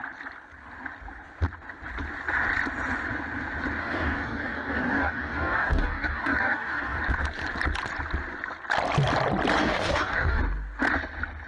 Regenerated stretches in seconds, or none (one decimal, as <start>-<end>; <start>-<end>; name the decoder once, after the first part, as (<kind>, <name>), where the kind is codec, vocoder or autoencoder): 3.8-7.0 (codec, DAC); 9.6-10.4